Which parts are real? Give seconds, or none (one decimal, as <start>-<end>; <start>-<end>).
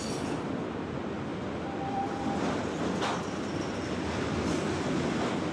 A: 0.0-1.3; 2.7-5.5